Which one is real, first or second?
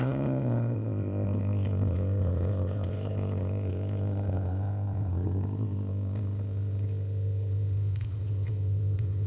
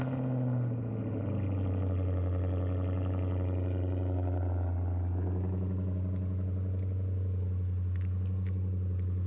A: second